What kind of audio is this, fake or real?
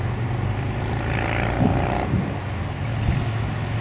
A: real